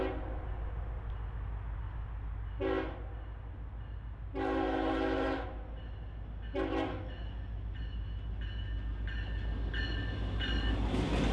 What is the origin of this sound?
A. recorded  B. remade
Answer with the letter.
A